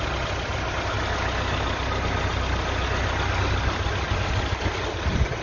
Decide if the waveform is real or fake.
real